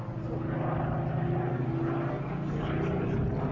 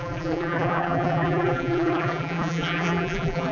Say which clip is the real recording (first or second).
first